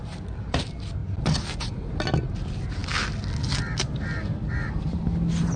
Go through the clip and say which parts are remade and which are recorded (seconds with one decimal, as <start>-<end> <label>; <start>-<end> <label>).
0.0-5.6 recorded